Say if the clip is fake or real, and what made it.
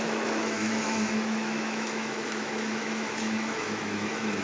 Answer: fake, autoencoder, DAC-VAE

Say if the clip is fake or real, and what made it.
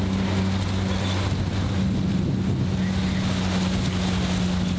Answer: real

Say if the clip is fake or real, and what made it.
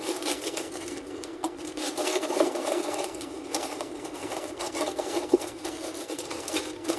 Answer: fake, codec, SNAC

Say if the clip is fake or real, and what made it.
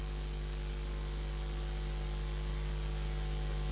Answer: real